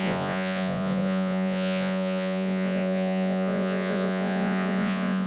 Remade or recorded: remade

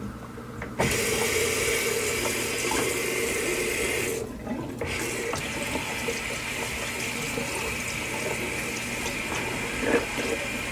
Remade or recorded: recorded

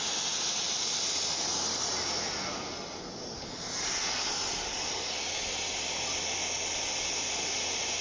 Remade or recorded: recorded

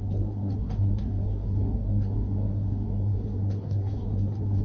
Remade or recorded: remade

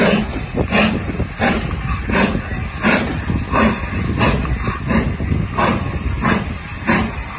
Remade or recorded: recorded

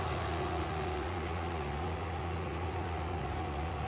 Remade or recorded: remade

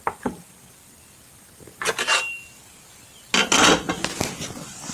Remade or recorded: recorded